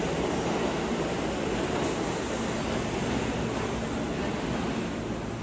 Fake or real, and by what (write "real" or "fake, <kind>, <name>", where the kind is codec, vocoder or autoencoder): real